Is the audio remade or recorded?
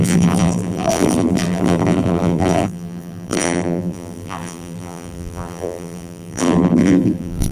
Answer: remade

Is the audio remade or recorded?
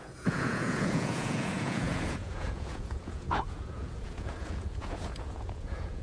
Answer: remade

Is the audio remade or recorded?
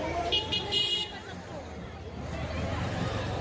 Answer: remade